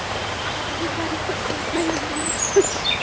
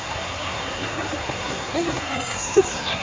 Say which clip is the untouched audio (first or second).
first